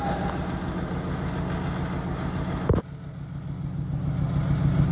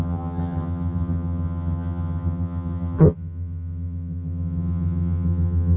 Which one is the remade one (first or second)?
second